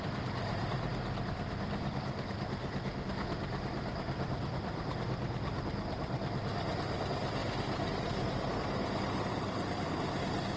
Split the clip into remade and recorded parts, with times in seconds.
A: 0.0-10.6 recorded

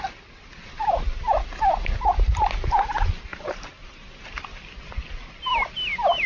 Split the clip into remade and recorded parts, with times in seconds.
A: 0.0-3.3 recorded; 3.3-4.2 remade; 4.2-6.3 recorded

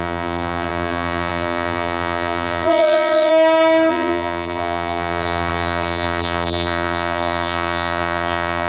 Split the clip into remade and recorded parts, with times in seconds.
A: 0.0-3.3 remade; 3.3-3.9 recorded; 3.9-8.7 remade

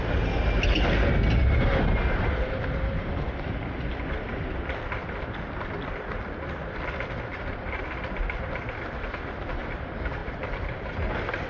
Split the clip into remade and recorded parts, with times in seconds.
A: 0.0-1.4 recorded; 1.4-3.9 remade; 3.9-7.3 recorded; 7.3-7.8 remade; 7.8-10.2 recorded; 10.2-10.9 remade; 10.9-11.5 recorded